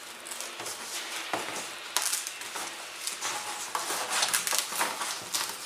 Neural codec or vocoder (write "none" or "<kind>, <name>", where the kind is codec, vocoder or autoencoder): none